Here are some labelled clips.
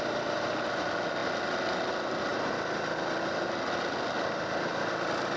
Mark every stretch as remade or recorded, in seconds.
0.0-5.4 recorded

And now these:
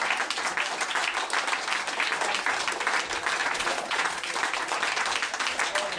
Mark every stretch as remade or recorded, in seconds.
0.0-3.4 recorded; 3.4-4.3 remade; 4.3-6.0 recorded

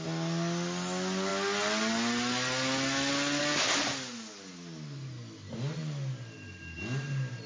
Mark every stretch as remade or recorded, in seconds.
0.0-7.5 recorded

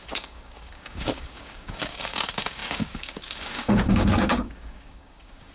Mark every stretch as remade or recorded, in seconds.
0.0-5.5 remade

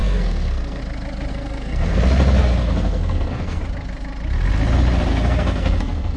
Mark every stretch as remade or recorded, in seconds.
0.0-0.8 remade; 0.8-1.3 recorded; 1.3-2.0 remade; 2.0-2.6 recorded; 2.6-3.6 remade; 3.6-5.1 recorded; 5.1-6.2 remade

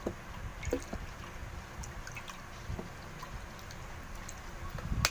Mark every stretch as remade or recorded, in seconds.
0.0-5.1 recorded